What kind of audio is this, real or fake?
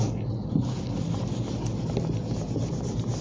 real